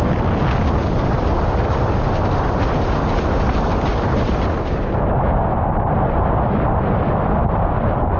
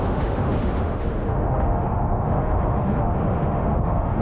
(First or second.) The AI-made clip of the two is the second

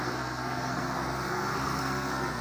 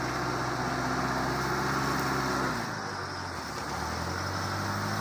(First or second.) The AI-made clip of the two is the first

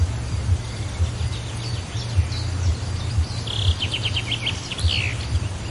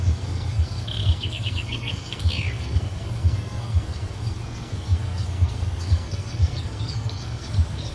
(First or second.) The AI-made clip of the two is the second